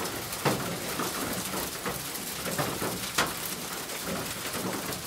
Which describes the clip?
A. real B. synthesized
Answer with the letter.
A